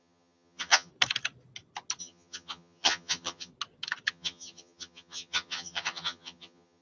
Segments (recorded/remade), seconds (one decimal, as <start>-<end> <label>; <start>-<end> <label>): 0.0-0.9 remade; 0.9-2.0 recorded; 2.0-3.5 remade; 3.5-4.1 recorded; 4.1-6.8 remade